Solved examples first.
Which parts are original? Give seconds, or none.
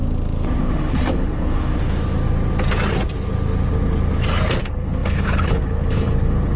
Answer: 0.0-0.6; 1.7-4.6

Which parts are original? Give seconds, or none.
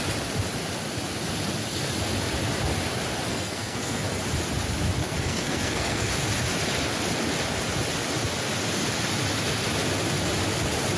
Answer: 0.0-3.3; 4.1-5.0; 6.1-11.0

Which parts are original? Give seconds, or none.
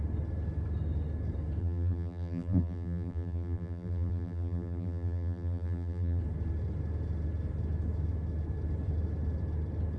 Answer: 0.0-1.6; 6.2-10.0